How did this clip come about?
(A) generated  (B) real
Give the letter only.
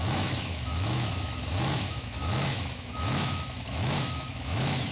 A